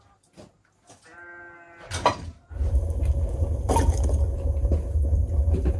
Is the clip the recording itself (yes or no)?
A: yes